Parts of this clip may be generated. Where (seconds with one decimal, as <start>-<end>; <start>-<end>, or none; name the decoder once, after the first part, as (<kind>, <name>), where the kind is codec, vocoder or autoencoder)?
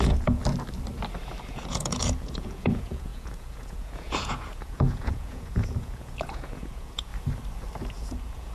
0.0-0.4 (vocoder, Vocos); 1.4-7.1; 7.9-8.5